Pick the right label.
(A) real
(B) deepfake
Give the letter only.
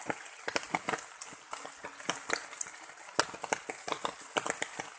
A